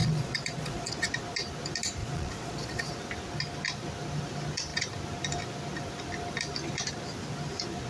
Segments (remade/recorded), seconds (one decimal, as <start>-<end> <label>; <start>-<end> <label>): 0.0-1.2 remade; 1.2-2.0 recorded; 2.0-2.9 remade; 2.9-7.9 recorded